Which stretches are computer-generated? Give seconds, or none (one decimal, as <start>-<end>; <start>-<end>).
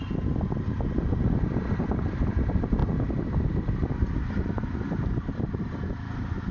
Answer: none